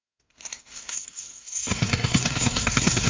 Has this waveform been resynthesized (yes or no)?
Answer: yes